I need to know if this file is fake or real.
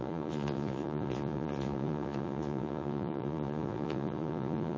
fake